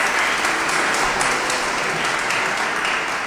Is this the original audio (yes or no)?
yes